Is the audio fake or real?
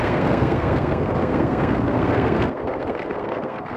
fake